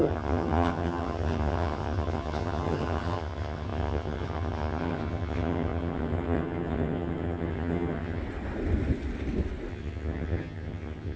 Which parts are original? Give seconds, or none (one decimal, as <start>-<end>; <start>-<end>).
8.2-9.7